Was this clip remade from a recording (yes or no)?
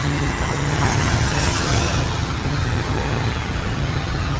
yes